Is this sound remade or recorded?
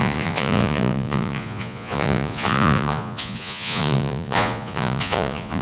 remade